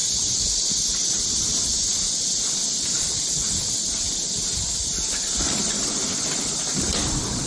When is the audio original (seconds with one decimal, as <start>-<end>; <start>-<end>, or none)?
0.0-7.5